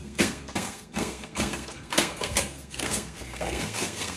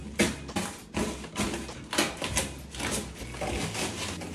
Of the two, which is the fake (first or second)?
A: first